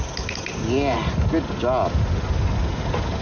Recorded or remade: recorded